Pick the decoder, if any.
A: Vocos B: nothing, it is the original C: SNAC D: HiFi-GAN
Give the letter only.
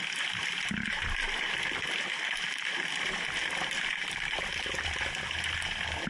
B